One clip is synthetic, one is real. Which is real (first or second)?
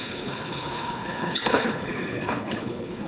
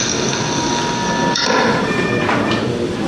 second